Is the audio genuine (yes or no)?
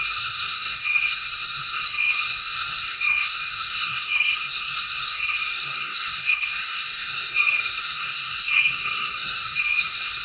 no